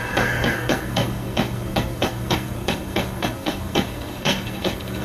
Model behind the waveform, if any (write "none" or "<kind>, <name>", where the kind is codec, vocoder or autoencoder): codec, SNAC